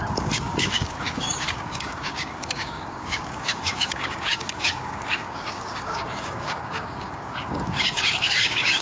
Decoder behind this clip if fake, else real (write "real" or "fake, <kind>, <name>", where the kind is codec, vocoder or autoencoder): fake, codec, DAC